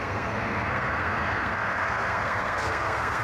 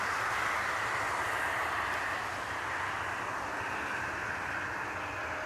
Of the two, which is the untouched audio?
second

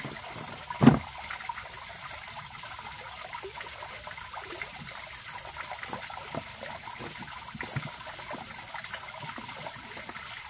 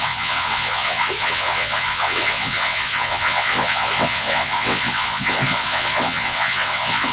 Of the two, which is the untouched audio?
first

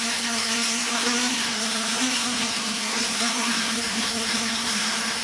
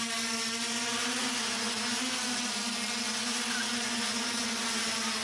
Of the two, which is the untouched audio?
second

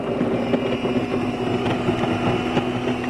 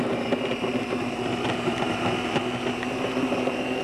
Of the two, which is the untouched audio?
first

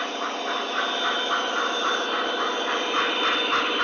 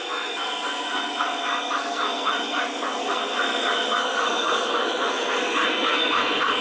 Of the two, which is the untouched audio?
first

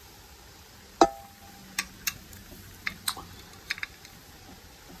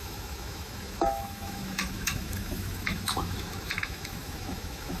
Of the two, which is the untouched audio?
first